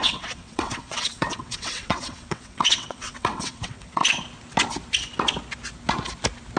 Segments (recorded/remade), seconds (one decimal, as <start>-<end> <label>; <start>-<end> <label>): 0.0-4.0 remade; 4.0-6.6 recorded

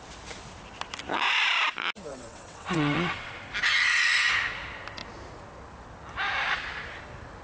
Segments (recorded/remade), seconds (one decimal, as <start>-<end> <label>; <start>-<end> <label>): 0.0-2.1 recorded; 2.1-3.3 remade; 3.3-7.4 recorded